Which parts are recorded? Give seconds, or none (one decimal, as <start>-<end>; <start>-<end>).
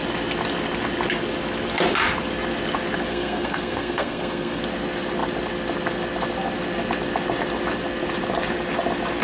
0.0-3.1; 4.6-9.2